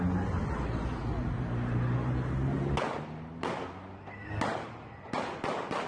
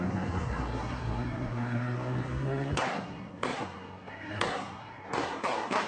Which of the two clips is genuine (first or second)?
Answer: first